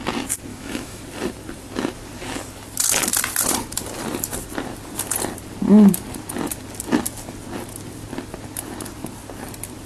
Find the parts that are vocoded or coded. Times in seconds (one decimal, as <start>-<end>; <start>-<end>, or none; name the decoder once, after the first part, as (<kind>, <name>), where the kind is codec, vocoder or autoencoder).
0.5-1.0 (autoencoder, DAC-VAE)